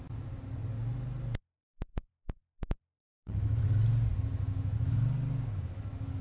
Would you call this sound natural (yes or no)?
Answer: yes